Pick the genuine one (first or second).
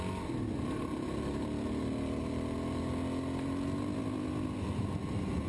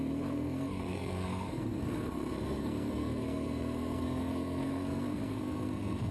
first